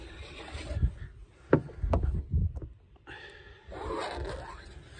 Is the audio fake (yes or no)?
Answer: no